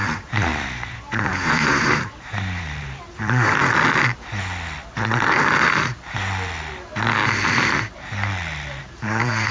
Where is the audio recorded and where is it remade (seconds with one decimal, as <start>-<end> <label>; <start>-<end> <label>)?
0.0-3.6 remade; 3.6-8.8 recorded; 8.8-9.5 remade